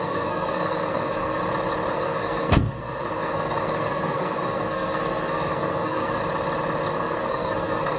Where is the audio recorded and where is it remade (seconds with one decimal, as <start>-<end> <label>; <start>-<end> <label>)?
0.0-1.4 remade; 1.4-1.9 recorded; 1.9-6.2 remade; 6.2-6.9 recorded; 6.9-8.0 remade